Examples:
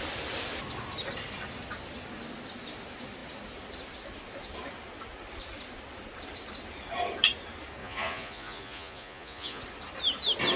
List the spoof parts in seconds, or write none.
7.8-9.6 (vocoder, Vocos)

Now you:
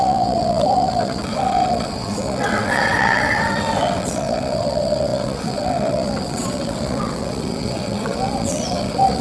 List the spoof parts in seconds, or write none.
0.0-9.2 (vocoder, WaveNeXt)

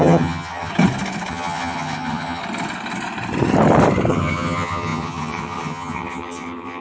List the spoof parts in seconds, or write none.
0.0-0.7 (vocoder, HiFi-GAN); 1.3-2.4; 4.1-6.8

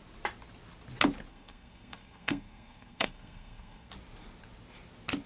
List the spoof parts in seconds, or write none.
1.3-3.9 (codec, SNAC)

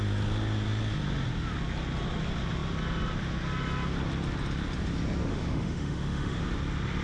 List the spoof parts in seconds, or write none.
5.3-6.4 (autoencoder, DAC-VAE)

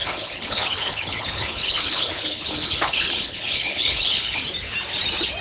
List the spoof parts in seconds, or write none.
0.0-4.4 (codec, HILCodec)

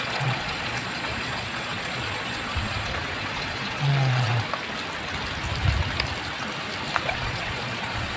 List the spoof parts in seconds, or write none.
0.0-4.3 (vocoder, Vocos); 6.9-8.2